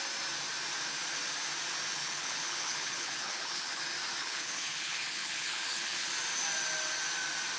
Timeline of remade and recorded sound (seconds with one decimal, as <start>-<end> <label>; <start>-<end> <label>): 0.0-2.0 recorded; 2.0-3.8 remade; 3.8-4.2 recorded; 4.2-6.1 remade; 6.1-7.6 recorded